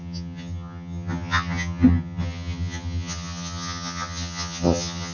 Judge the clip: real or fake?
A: fake